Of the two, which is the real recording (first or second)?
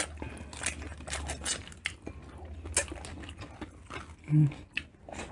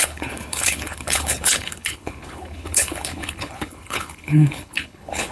first